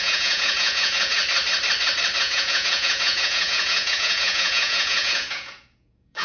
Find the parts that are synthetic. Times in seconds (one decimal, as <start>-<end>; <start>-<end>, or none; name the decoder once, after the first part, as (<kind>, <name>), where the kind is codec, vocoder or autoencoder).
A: 0.0-1.2 (vocoder, Vocos); 2.2-6.2